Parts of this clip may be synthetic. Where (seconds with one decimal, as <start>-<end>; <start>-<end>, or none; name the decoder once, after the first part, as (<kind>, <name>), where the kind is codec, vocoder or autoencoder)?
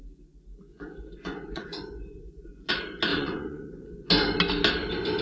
0.7-2.7 (vocoder, Vocos); 3.1-4.1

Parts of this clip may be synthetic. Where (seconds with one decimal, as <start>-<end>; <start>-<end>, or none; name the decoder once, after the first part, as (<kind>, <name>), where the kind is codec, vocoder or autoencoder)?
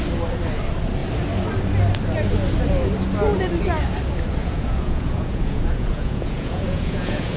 4.4-7.4 (vocoder, Vocos)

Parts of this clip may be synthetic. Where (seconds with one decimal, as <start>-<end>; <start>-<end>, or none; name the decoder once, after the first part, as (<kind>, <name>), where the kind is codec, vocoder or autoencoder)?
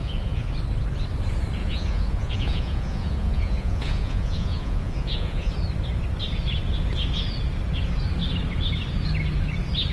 0.0-0.5 (vocoder, Vocos); 1.6-5.5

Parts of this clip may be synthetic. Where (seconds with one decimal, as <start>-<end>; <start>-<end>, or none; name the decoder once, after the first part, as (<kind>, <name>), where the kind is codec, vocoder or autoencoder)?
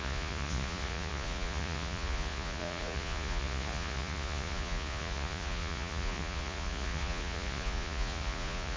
0.0-8.8 (vocoder, Vocos)